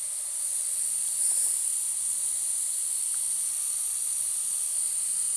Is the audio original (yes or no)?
yes